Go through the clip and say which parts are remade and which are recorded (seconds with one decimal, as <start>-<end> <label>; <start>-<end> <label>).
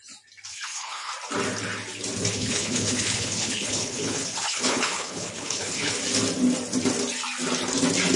0.0-0.5 recorded; 0.5-1.1 remade; 1.1-2.3 recorded; 2.3-5.9 remade; 5.9-8.2 recorded